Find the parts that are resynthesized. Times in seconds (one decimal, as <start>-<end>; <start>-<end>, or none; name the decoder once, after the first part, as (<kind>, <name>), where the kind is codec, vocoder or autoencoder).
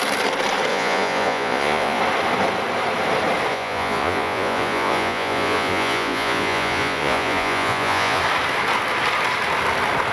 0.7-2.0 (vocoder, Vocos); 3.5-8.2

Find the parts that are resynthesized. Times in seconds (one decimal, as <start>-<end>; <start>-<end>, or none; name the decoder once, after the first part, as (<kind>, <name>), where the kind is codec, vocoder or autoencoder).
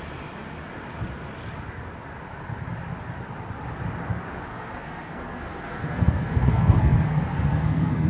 4.5-8.1 (codec, SNAC)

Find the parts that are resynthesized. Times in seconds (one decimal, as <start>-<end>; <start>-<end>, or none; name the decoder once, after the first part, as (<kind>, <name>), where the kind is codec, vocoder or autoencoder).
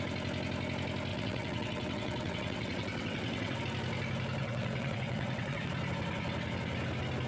1.1-3.6 (vocoder, WaveNeXt); 4.4-5.7